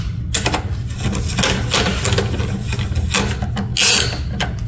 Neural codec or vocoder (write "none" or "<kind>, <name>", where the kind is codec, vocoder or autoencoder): none